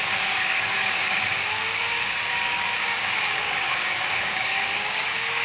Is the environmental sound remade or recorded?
remade